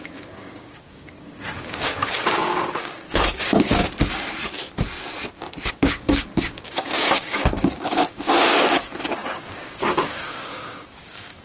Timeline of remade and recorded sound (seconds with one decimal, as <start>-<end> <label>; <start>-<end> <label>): 0.0-3.8 remade; 3.8-5.7 recorded; 5.7-11.4 remade